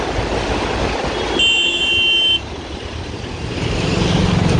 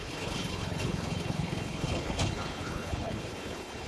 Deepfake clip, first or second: second